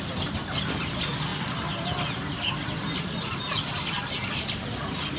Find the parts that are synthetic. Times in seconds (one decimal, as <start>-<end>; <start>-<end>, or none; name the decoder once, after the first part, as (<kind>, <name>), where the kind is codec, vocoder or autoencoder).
none